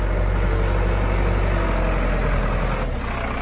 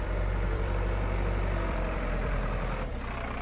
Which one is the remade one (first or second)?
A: second